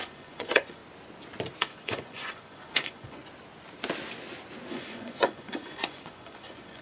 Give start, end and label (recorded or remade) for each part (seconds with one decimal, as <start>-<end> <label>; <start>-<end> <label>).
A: 0.0-0.8 remade; 0.8-1.6 recorded; 1.6-3.2 remade; 3.2-4.7 recorded; 4.7-6.8 remade